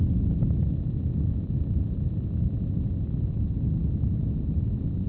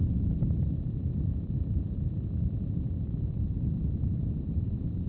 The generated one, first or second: second